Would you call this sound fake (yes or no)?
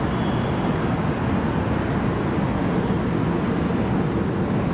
no